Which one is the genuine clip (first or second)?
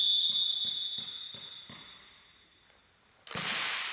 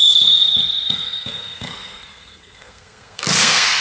first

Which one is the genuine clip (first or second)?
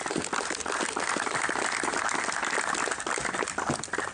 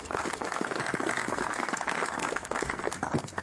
first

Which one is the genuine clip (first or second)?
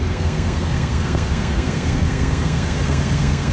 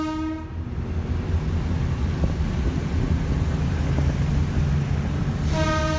second